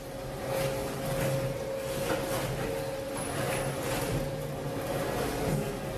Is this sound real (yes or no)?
yes